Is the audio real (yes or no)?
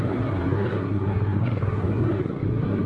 no